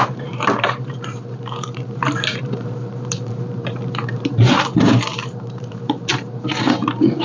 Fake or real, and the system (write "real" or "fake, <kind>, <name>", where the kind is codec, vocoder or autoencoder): fake, vocoder, BigVGAN v2